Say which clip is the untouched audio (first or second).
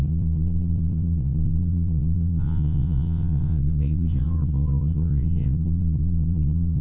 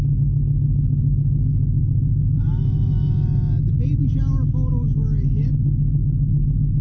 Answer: second